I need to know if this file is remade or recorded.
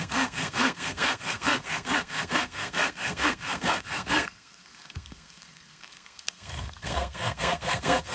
remade